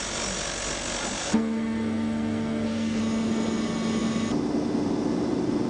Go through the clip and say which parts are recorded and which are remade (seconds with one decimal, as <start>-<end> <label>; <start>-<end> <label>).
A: 0.0-1.2 recorded; 1.2-3.0 remade; 3.0-5.7 recorded